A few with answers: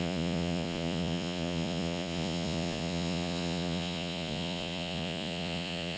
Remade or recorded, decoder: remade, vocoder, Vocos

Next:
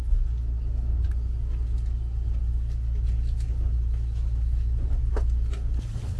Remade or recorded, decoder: recorded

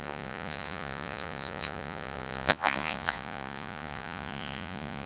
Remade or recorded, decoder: remade, vocoder, Vocos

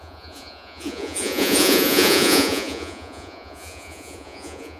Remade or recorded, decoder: remade, vocoder, Vocos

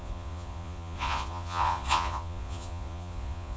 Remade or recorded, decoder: remade, vocoder, Vocos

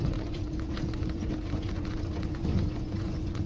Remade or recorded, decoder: remade, vocoder, Vocos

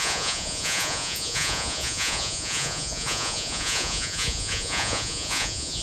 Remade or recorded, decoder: remade, vocoder, Vocos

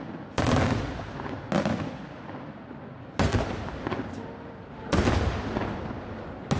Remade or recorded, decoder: recorded